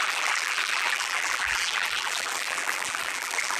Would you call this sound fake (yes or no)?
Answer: yes